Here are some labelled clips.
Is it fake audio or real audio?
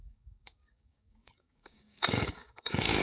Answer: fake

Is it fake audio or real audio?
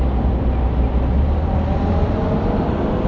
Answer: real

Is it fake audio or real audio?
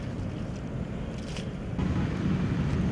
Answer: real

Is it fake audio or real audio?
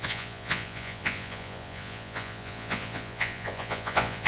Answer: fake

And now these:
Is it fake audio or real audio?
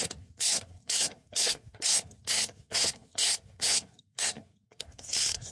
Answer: fake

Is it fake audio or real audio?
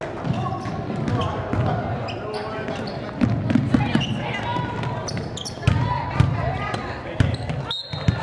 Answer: real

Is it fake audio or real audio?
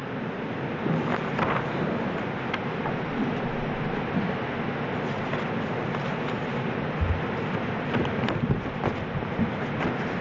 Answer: real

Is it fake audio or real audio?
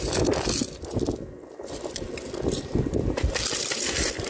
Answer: real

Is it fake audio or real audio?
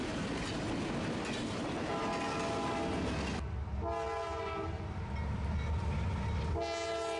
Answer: real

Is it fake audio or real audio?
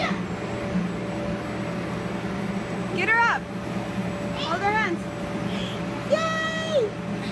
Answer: real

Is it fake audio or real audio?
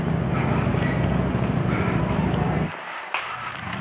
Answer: real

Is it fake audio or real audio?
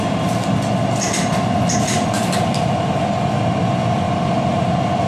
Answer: real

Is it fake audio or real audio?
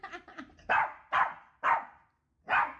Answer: real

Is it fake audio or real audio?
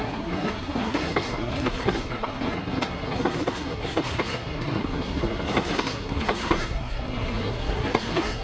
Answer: fake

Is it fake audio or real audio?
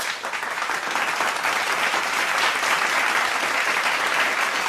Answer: real